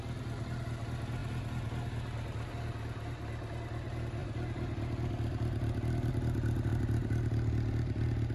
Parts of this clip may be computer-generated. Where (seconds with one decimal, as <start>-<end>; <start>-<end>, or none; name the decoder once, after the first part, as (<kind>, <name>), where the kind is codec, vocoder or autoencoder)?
4.2-6.1 (vocoder, BigVGAN v2); 6.7-8.3